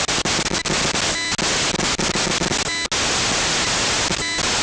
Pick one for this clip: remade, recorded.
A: recorded